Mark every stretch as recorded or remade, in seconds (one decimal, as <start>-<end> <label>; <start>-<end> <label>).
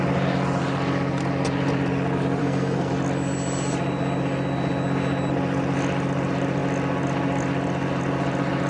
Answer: 0.0-2.4 recorded; 2.4-2.9 remade; 2.9-8.7 recorded